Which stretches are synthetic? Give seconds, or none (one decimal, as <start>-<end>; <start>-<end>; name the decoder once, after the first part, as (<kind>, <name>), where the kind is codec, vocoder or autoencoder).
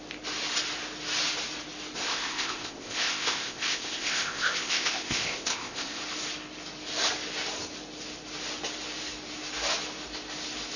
2.0-6.0 (codec, ZipCodec)